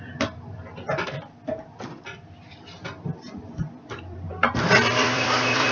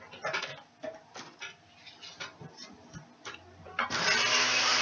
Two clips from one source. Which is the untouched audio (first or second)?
second